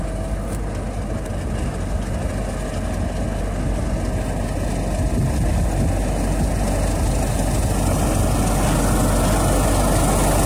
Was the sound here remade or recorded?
recorded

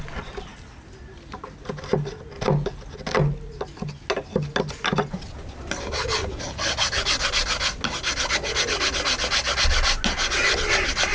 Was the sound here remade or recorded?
recorded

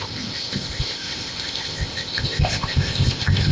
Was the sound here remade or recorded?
remade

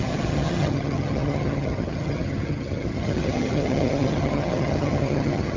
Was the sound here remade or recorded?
remade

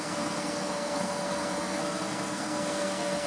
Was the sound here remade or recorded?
remade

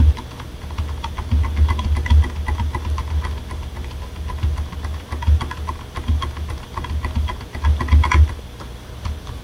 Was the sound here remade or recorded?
recorded